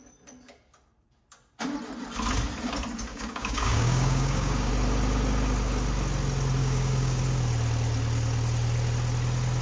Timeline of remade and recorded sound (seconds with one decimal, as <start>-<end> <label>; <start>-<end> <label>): 0.0-3.1 recorded; 3.1-4.7 remade; 4.7-6.6 recorded; 6.6-7.2 remade; 7.2-9.6 recorded